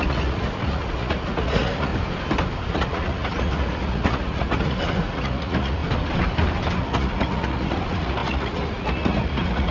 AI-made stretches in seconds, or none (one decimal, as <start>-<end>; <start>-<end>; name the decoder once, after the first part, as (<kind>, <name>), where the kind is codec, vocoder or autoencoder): 0.0-1.9 (vocoder, Vocos); 2.7-5.8; 6.8-9.7